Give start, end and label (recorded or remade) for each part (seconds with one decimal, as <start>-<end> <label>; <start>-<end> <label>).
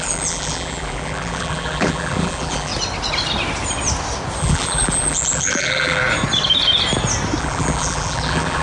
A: 0.0-2.7 remade; 2.7-4.4 recorded; 4.4-6.0 remade; 6.0-7.4 recorded; 7.4-8.6 remade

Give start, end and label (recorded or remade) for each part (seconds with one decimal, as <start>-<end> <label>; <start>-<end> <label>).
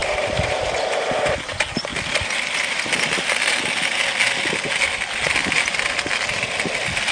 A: 0.0-0.7 remade; 0.7-7.1 recorded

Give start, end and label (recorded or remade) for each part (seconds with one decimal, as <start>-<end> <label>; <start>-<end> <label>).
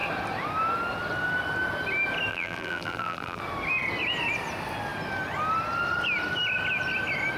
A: 0.0-2.3 recorded; 2.3-3.4 remade; 3.4-7.4 recorded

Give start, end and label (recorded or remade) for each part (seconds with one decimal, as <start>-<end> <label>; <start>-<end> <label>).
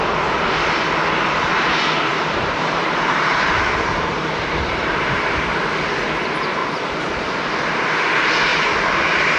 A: 0.0-2.1 recorded; 2.1-5.5 remade; 5.5-6.6 recorded; 6.6-7.4 remade; 7.4-8.5 recorded; 8.5-9.4 remade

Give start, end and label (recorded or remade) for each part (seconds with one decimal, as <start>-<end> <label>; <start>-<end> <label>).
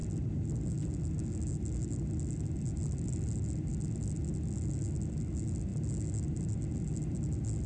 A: 0.0-7.7 recorded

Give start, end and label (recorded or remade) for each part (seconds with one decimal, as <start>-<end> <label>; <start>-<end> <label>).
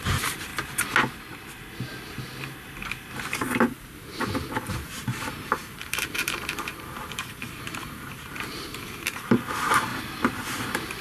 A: 0.0-0.5 remade; 0.5-4.7 recorded; 4.7-9.9 remade; 9.9-10.6 recorded; 10.6-11.0 remade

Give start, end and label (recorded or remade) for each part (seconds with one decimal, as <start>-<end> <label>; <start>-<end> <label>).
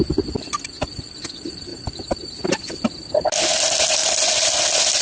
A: 0.0-1.7 recorded; 1.7-2.4 remade; 2.4-5.0 recorded